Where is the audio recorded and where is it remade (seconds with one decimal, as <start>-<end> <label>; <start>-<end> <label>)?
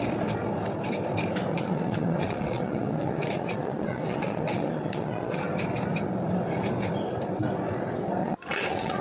0.0-1.5 recorded; 1.5-5.4 remade; 5.4-8.2 recorded; 8.2-9.0 remade